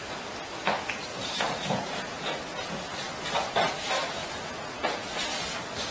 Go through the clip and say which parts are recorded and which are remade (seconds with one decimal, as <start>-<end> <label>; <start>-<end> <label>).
0.0-1.1 recorded; 1.1-2.9 remade; 2.9-4.2 recorded; 4.2-4.8 remade; 4.8-5.9 recorded